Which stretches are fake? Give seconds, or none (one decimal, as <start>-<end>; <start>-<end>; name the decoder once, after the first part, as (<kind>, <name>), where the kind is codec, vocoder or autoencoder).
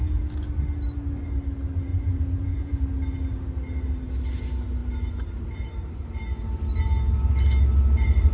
1.9-2.8 (vocoder, Vocos)